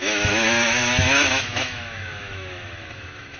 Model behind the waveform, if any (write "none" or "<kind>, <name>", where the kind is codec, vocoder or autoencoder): autoencoder, DAC-VAE